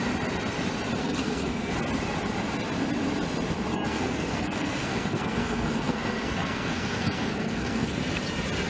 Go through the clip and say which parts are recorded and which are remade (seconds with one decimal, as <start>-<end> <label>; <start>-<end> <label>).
0.0-1.0 recorded; 1.0-1.7 remade; 1.7-3.7 recorded; 3.7-8.0 remade; 8.0-8.7 recorded